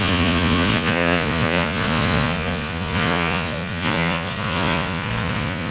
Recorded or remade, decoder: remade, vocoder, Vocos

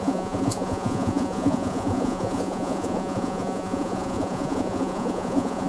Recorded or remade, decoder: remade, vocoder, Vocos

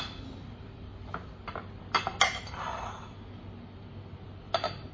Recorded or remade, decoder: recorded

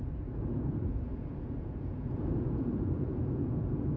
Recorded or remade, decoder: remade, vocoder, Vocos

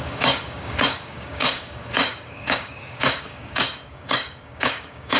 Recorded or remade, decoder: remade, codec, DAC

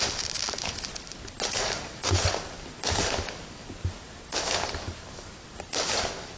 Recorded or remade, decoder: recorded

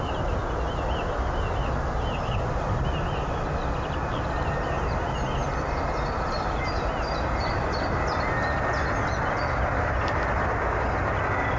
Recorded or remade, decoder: recorded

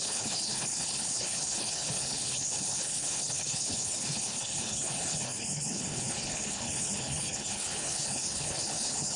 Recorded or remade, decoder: remade, codec, HILCodec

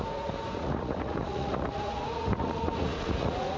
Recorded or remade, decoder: remade, vocoder, Vocos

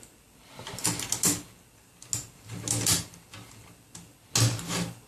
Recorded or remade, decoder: recorded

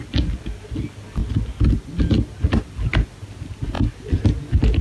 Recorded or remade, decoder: recorded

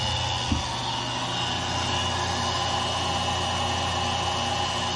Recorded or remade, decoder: recorded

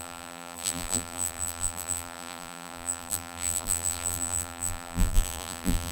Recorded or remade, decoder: remade, vocoder, BigVGAN v2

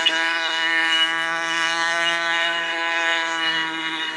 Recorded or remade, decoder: remade, codec, SNAC